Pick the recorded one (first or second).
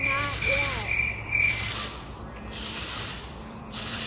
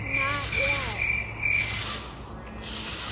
second